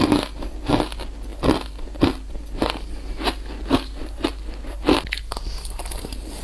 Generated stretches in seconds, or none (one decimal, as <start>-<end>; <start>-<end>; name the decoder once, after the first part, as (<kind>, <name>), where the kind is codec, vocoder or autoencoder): none